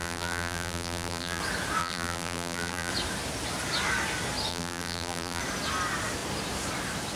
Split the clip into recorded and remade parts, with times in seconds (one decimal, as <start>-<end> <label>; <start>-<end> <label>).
0.0-1.4 remade; 1.4-1.8 recorded; 1.8-2.9 remade; 2.9-4.5 recorded; 4.5-5.4 remade; 5.4-7.2 recorded